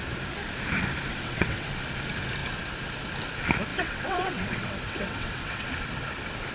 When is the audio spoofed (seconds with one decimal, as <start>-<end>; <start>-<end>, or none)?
1.1-1.7; 3.7-5.7